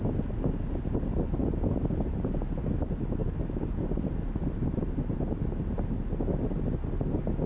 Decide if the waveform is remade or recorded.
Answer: recorded